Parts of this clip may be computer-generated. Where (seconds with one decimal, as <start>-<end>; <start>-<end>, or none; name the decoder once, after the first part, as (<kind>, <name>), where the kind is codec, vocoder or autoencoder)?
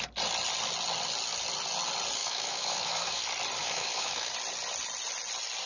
2.2-3.2 (autoencoder, DAC-VAE); 3.6-4.3